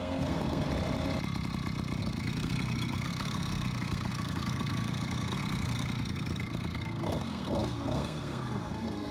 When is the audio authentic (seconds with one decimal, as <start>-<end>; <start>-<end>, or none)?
0.7-2.0